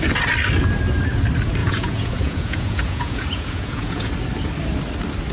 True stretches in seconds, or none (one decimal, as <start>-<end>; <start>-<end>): 0.0-1.6; 4.1-5.3